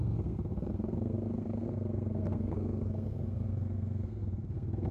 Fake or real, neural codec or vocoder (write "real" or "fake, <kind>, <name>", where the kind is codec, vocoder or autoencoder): fake, codec, SNAC